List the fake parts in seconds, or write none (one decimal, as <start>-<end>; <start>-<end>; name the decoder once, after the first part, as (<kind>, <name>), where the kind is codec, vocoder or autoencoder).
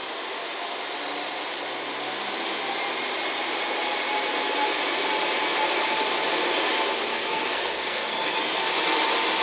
7.1-8.6 (codec, SNAC)